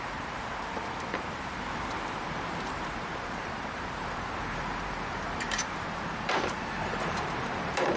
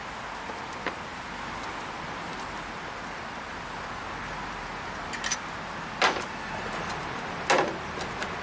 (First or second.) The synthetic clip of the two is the first